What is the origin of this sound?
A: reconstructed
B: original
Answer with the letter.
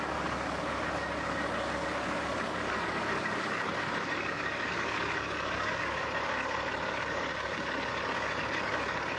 A